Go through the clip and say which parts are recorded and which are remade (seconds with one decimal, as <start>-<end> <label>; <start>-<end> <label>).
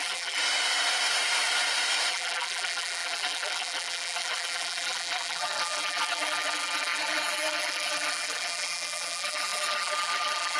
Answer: 0.0-0.4 remade; 0.4-2.1 recorded; 2.1-10.6 remade